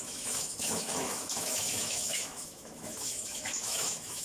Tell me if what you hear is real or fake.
fake